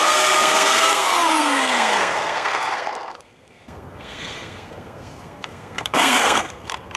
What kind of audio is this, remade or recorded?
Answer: remade